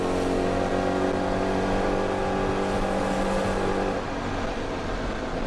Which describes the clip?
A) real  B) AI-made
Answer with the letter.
A